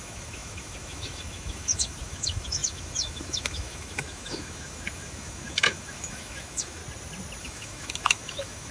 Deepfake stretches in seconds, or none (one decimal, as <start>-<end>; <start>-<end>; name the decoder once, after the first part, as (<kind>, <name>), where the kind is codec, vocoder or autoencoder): 0.0-6.8 (autoencoder, DAC-VAE); 7.4-8.7